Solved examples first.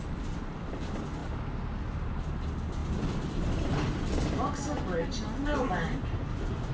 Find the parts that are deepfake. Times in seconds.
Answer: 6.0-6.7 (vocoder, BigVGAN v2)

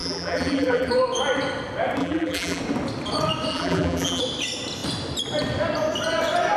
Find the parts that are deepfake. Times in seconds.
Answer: 0.0-0.9 (vocoder, BigVGAN v2); 2.0-2.6; 3.5-4.2

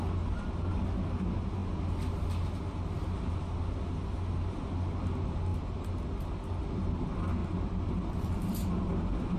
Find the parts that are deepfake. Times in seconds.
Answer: 7.4-8.7 (vocoder, BigVGAN v2)

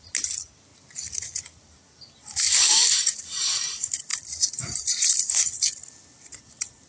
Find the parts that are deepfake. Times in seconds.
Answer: 4.1-5.5 (vocoder, BigVGAN v2)